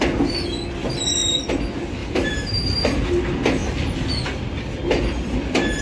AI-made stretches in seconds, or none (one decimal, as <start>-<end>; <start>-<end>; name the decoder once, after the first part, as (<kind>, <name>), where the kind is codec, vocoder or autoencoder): 2.0-3.1 (vocoder, BigVGAN v2); 3.6-4.1